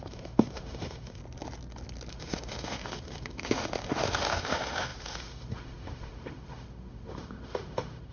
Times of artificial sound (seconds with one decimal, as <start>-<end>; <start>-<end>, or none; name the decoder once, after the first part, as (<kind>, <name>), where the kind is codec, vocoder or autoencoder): 0.0-1.2 (autoencoder, DAC-VAE); 2.1-8.1

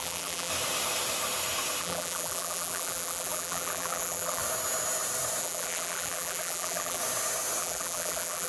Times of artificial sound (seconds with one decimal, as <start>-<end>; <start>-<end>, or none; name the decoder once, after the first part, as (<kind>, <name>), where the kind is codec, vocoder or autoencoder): 0.0-0.5 (vocoder, BigVGAN v2); 1.8-4.4; 5.4-7.0; 7.6-8.5

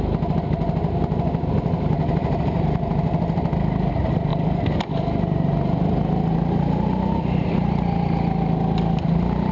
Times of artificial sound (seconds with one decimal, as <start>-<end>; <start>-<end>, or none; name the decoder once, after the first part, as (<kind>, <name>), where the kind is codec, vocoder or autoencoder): none

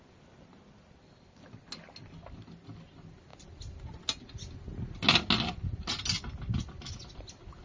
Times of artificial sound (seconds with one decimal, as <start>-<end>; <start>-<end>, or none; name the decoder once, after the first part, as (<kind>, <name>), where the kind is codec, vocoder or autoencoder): none

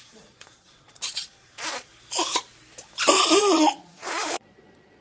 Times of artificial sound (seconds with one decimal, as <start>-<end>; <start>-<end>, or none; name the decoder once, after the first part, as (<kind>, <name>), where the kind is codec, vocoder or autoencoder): 0.0-1.9 (vocoder, Vocos); 3.4-5.0